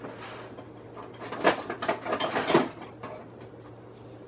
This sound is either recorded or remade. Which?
recorded